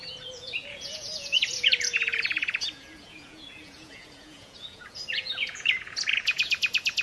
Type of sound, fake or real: fake